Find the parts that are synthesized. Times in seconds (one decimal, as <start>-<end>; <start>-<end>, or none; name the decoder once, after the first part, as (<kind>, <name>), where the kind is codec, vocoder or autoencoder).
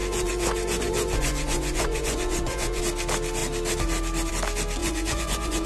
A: 0.0-2.8 (vocoder, Vocos); 4.8-5.7